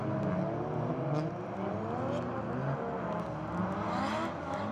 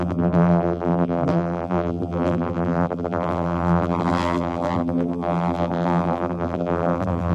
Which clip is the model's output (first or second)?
second